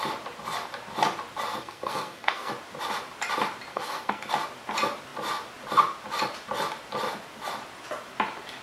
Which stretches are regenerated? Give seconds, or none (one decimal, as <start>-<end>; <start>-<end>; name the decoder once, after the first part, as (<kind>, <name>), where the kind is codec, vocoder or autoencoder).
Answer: 1.5-2.5 (codec, SNAC); 3.7-4.3